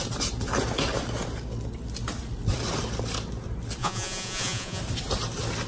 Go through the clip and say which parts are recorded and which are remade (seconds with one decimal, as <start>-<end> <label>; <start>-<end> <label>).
0.0-3.8 recorded; 3.8-4.8 remade; 4.8-5.7 recorded